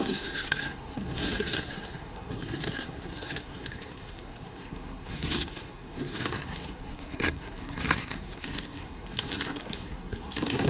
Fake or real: fake